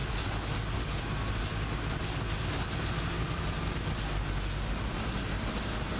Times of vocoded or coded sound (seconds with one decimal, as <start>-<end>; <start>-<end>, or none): none